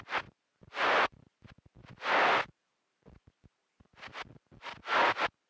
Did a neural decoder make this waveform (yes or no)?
no